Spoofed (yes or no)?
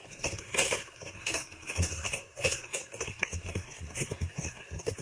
yes